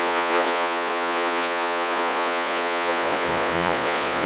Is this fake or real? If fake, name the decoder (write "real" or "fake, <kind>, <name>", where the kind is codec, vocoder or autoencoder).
fake, vocoder, Vocos